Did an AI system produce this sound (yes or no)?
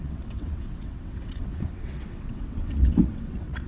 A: yes